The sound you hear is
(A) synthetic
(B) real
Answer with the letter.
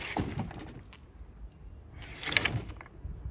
B